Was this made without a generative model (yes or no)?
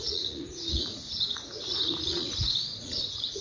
no